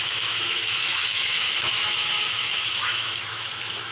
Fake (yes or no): yes